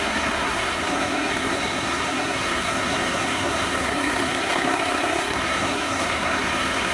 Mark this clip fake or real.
fake